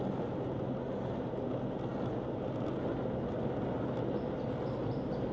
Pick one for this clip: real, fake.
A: real